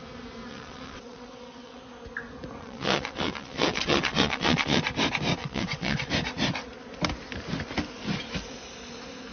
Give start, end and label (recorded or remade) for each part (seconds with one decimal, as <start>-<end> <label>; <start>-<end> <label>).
0.0-0.5 recorded; 0.5-1.8 remade; 1.8-2.6 recorded; 2.6-4.8 remade; 4.8-5.4 recorded; 5.4-6.1 remade; 6.1-9.3 recorded